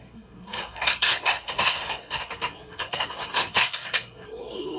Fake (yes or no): yes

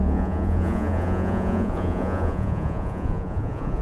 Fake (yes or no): yes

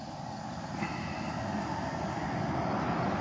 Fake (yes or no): no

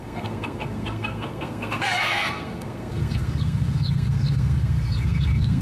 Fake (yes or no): yes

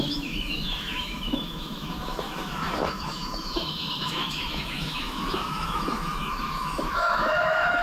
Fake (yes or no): yes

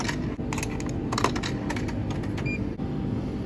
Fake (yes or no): no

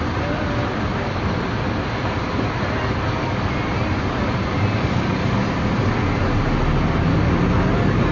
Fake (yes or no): no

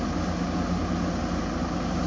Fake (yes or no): no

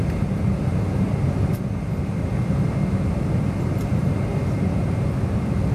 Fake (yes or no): no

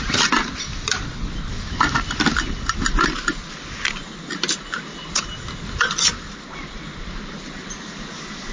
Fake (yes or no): no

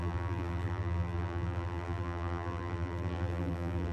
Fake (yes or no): yes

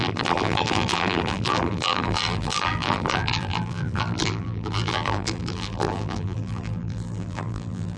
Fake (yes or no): yes